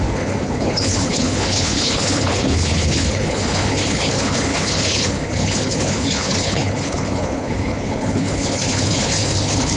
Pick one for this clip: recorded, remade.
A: remade